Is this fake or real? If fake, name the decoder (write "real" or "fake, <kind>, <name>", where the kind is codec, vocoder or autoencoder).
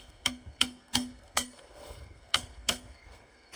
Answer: fake, codec, SNAC